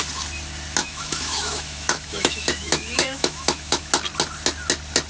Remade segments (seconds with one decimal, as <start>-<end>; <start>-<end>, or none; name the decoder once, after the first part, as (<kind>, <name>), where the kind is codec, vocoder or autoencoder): 0.8-3.9 (autoencoder, DAC-VAE)